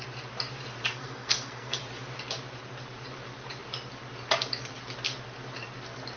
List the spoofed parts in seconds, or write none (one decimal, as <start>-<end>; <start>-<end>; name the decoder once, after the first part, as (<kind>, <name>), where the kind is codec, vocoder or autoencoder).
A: 0.9-1.8 (codec, SNAC)